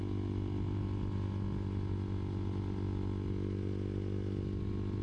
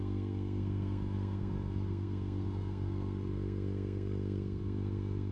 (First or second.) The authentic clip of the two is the first